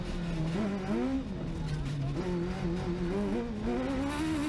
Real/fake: real